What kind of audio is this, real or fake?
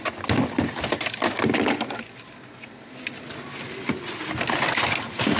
real